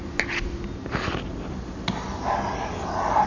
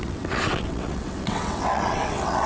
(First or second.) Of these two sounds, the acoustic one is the first